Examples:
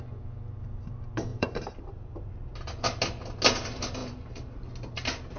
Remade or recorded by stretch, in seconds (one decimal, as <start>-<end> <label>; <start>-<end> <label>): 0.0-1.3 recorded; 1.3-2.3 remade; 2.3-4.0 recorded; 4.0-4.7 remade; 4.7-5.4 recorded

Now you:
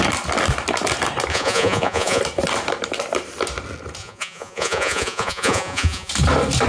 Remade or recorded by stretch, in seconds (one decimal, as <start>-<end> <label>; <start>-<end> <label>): 0.0-1.3 recorded; 1.3-2.2 remade; 2.2-4.0 recorded; 4.0-6.1 remade; 6.1-6.7 recorded

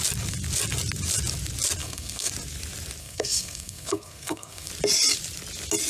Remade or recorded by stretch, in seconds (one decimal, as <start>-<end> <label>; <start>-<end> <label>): 0.0-1.8 recorded; 1.8-2.3 remade; 2.3-3.0 recorded; 3.0-4.7 remade; 4.7-5.9 recorded

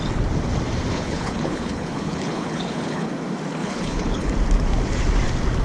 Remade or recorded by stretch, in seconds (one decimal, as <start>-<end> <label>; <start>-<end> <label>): 0.0-0.9 recorded; 0.9-3.1 remade; 3.1-3.6 recorded; 3.6-4.3 remade; 4.3-5.6 recorded

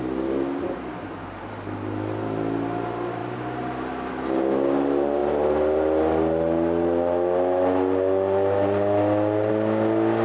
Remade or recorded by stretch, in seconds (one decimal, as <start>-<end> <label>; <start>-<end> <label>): 0.0-10.2 recorded